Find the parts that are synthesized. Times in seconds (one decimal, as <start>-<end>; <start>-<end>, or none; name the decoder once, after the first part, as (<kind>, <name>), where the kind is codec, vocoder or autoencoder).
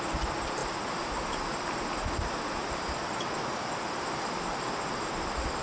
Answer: none